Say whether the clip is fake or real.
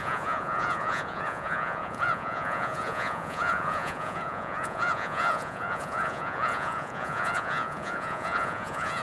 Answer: fake